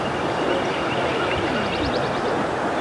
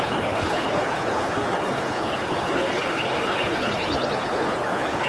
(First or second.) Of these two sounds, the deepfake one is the second